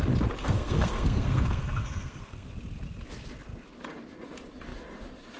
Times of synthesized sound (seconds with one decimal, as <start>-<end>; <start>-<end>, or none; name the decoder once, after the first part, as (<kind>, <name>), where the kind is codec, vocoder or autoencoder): 0.4-2.5 (codec, SNAC)